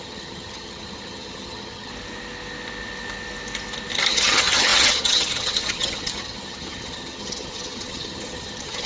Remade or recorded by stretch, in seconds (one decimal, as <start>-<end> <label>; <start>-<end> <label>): 0.0-1.9 remade; 1.9-4.1 recorded; 4.1-8.9 remade